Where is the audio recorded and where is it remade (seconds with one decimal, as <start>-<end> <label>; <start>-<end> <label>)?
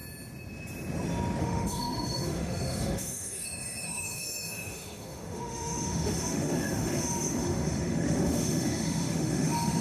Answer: 0.0-1.4 recorded; 1.4-9.8 remade